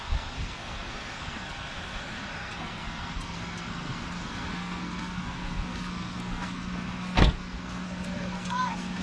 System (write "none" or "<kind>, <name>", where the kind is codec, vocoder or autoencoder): codec, SNAC